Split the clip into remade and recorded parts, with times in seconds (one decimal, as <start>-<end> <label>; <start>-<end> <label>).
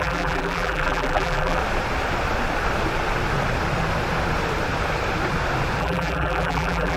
0.0-1.6 remade; 1.6-5.8 recorded; 5.8-7.0 remade